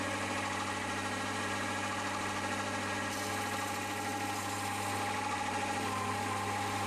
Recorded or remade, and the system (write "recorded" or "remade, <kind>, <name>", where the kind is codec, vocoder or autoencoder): recorded